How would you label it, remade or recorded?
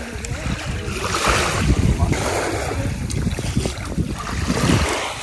recorded